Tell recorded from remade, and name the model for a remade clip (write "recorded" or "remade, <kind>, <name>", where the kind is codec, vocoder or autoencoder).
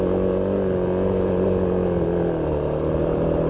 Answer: recorded